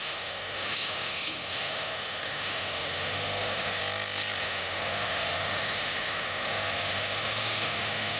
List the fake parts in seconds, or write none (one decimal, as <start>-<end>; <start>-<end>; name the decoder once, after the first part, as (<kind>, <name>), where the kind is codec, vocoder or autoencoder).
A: 0.0-3.8 (autoencoder, DAC-VAE); 4.4-8.2